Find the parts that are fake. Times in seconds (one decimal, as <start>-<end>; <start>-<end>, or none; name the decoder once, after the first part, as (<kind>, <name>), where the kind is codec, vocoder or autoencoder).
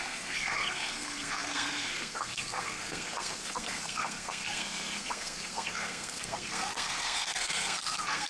0.0-8.3 (codec, SNAC)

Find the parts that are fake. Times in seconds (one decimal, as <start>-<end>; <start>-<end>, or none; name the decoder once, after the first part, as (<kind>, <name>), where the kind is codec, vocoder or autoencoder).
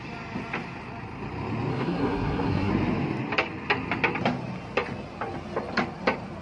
1.7-2.7 (codec, SNAC)